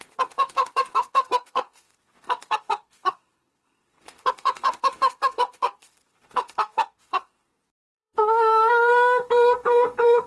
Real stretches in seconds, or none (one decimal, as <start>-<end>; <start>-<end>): none